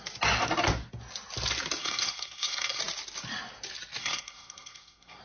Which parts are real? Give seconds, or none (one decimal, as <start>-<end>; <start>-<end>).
0.0-1.8; 2.8-4.0